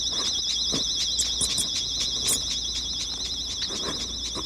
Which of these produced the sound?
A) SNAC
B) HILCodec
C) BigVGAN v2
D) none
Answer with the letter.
D